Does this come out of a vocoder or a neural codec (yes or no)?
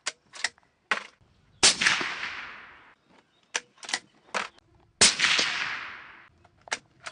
no